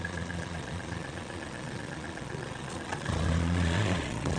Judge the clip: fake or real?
fake